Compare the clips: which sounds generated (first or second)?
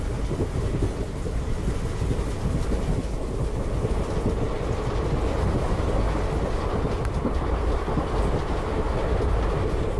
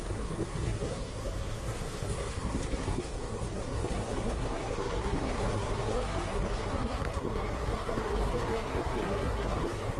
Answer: second